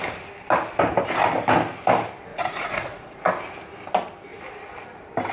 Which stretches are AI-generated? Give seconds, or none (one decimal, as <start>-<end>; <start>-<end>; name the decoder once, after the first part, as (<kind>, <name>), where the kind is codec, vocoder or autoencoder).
2.3-3.2 (vocoder, Vocos)